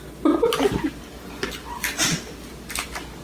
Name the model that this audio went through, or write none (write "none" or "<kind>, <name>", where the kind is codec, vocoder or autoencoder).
none